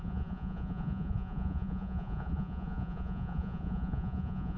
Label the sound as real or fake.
fake